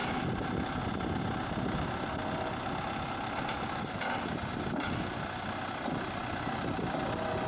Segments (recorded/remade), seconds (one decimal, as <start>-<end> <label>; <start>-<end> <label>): 0.0-7.5 recorded